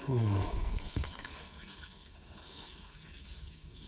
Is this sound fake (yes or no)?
yes